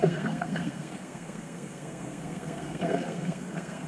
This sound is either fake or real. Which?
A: fake